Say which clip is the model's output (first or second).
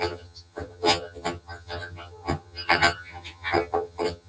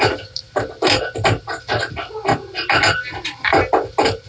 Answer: first